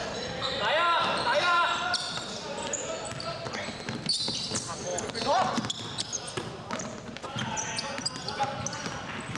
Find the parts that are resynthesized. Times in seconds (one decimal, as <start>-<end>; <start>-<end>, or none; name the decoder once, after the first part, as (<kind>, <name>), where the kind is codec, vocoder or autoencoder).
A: 7.2-7.7 (vocoder, Vocos)